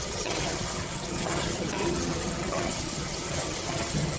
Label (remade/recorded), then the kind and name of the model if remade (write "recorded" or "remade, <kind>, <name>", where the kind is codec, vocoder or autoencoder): remade, vocoder, HiFi-GAN